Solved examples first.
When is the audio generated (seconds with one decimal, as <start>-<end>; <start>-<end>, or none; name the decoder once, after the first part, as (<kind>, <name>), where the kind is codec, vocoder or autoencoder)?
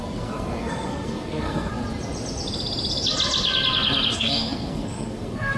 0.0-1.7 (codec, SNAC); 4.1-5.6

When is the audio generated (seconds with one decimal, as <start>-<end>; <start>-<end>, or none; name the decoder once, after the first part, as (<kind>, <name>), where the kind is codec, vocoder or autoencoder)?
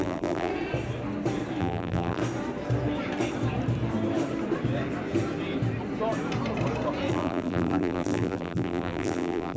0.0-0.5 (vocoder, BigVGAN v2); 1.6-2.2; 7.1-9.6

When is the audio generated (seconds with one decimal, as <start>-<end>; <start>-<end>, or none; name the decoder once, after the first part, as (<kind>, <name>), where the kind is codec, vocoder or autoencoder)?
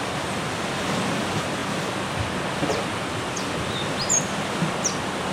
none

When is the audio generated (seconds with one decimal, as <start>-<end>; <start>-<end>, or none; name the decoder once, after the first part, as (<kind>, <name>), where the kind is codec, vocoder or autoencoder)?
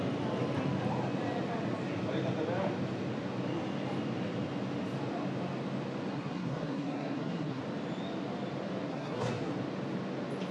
6.1-7.6 (codec, SNAC); 8.9-9.5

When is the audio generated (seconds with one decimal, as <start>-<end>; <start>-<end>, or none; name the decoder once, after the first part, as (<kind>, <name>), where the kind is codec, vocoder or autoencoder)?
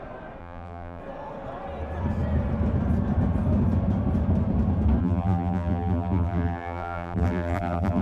0.4-1.0 (vocoder, BigVGAN v2); 5.0-8.0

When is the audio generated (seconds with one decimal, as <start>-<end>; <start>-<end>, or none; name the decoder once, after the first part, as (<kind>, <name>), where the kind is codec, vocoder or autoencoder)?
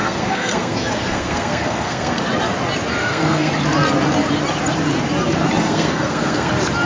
0.0-2.2 (codec, SNAC); 3.0-3.5; 5.6-6.5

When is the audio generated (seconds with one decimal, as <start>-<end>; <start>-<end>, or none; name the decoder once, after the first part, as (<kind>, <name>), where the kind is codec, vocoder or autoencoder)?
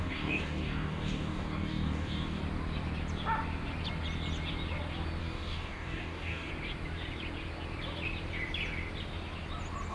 0.0-2.4 (codec, DAC); 5.2-6.5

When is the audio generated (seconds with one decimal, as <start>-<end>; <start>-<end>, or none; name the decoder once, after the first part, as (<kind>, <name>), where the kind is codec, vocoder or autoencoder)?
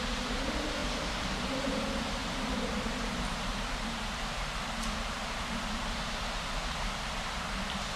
0.8-1.3 (vocoder, BigVGAN v2); 2.2-5.8